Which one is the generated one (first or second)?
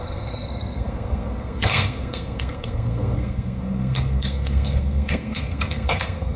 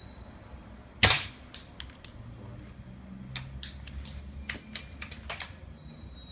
first